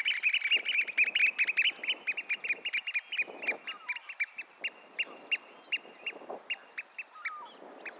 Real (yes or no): yes